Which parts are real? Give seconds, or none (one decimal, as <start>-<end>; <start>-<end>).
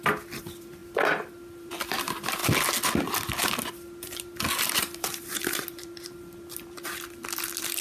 2.4-4.0